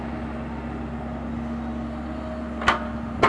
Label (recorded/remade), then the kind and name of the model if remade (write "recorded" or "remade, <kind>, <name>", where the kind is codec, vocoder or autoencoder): recorded